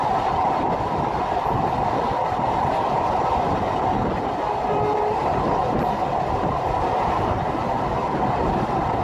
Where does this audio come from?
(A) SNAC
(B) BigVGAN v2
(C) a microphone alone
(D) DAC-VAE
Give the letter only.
C